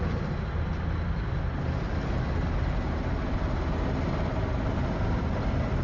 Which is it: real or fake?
real